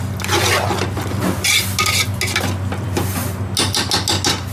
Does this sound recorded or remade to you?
recorded